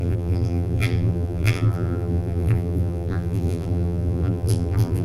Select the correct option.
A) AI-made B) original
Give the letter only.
A